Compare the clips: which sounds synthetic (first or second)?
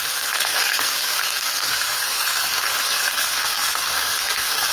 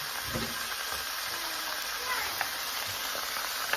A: first